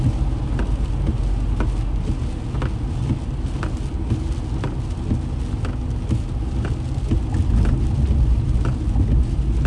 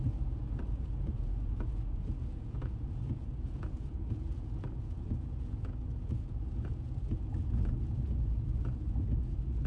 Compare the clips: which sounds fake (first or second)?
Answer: second